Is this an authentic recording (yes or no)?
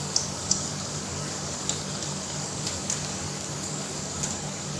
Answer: no